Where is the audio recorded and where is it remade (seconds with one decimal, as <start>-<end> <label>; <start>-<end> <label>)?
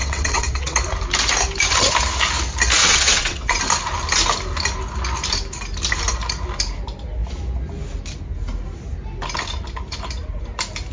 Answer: 0.0-0.8 remade; 0.8-2.8 recorded; 2.8-3.6 remade; 3.6-10.9 recorded